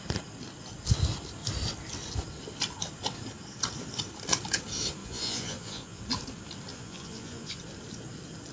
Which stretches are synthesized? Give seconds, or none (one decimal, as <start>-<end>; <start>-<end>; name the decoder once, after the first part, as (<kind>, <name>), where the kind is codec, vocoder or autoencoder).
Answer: 5.0-6.0 (vocoder, Vocos); 6.7-7.6